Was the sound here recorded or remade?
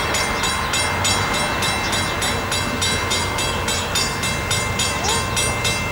recorded